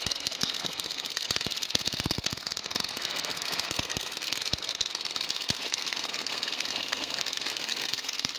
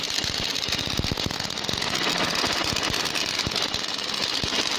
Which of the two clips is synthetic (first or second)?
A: first